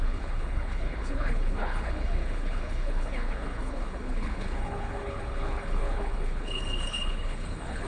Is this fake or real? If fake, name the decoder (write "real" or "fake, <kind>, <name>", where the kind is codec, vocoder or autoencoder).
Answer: fake, codec, HILCodec